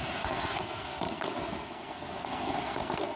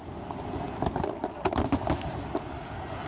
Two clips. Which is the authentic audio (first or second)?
second